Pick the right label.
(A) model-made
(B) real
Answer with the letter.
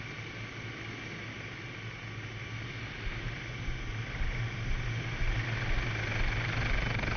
B